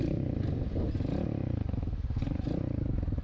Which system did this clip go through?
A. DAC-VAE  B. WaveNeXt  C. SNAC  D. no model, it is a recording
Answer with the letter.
D